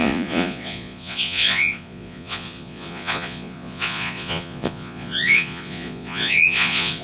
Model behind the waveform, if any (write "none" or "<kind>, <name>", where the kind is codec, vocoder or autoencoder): vocoder, Vocos